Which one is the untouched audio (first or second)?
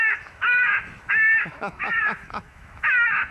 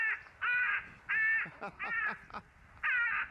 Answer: second